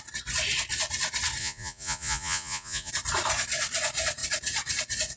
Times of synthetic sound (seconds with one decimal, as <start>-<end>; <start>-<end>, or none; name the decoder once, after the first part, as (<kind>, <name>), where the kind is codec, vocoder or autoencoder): 1.4-2.9 (vocoder, Vocos)